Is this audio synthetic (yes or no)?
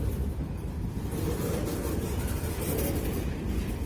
yes